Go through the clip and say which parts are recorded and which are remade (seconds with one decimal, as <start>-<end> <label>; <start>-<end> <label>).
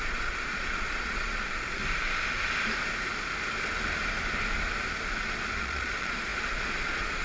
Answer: 0.0-1.8 remade; 1.8-5.6 recorded; 5.6-7.2 remade